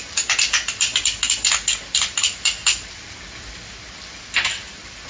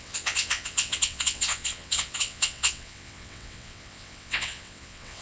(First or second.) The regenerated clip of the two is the second